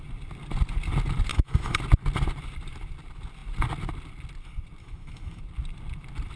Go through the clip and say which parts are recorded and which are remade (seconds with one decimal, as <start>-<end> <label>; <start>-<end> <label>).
0.0-1.3 recorded; 1.3-1.8 remade; 1.8-4.8 recorded; 4.8-5.4 remade; 5.4-6.4 recorded